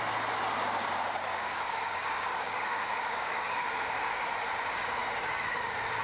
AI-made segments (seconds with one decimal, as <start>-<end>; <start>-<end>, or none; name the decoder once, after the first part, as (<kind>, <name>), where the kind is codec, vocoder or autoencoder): 1.3-4.2 (codec, DAC)